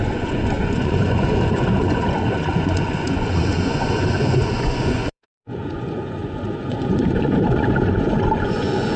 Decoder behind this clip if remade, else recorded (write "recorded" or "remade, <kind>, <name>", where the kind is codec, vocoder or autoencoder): remade, vocoder, Vocos